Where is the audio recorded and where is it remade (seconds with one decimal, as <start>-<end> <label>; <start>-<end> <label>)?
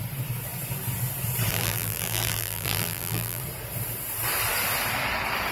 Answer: 0.0-1.5 recorded; 1.5-3.4 remade; 3.4-5.5 recorded